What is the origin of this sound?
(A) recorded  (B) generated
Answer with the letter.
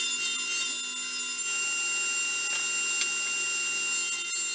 A